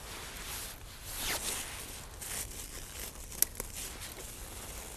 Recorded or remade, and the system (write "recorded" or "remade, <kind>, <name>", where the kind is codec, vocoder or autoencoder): recorded